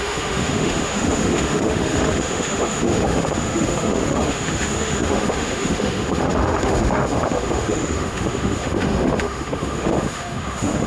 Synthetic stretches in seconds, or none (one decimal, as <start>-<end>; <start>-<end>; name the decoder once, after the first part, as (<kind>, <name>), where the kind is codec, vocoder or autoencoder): 0.0-10.9 (autoencoder, DAC-VAE)

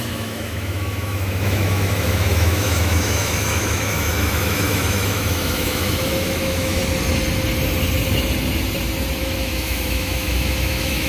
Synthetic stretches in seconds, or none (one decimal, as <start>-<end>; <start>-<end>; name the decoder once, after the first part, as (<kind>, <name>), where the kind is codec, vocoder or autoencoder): 0.0-6.8 (autoencoder, DAC-VAE); 9.2-11.1

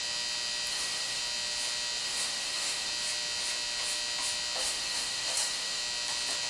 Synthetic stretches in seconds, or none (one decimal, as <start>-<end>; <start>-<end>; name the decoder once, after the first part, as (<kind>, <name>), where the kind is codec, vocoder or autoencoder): 0.7-1.2 (autoencoder, DAC-VAE); 2.0-2.9; 4.6-5.8

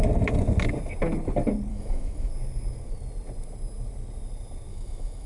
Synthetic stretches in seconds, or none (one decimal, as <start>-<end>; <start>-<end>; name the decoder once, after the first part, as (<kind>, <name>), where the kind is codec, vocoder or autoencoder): 1.7-2.3 (autoencoder, DAC-VAE); 4.7-5.3

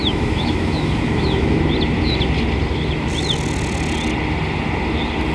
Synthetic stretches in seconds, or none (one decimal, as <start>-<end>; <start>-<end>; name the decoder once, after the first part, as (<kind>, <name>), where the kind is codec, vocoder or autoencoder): 0.0-1.6 (autoencoder, DAC-VAE)

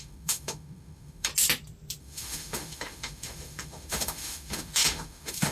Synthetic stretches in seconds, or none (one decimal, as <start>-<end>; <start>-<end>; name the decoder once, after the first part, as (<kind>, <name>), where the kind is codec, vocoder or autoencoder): 0.0-1.3 (autoencoder, DAC-VAE); 2.0-5.5

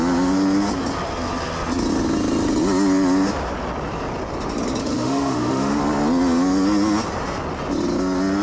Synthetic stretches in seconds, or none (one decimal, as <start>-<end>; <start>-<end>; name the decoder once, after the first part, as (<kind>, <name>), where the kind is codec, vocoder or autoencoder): 4.8-5.8 (autoencoder, DAC-VAE)